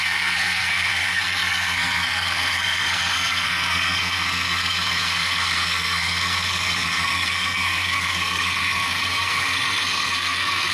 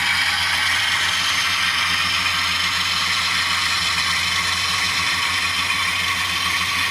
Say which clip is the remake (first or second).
first